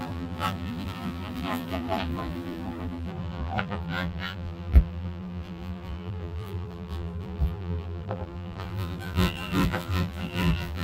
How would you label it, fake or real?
fake